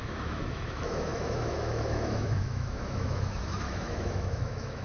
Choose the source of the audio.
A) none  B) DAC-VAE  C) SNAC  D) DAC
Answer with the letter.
B